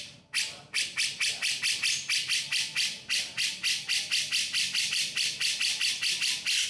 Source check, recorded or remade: remade